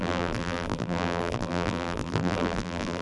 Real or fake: fake